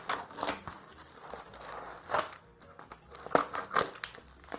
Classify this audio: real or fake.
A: real